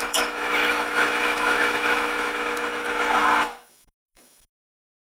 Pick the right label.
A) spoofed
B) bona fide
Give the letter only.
A